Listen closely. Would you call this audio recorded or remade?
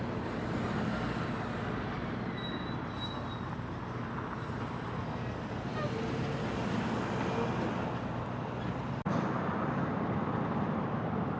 recorded